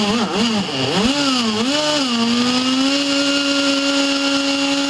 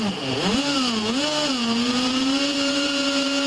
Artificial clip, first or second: second